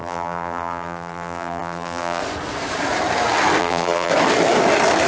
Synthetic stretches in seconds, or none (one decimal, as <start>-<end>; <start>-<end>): 0.0-2.2; 3.6-4.1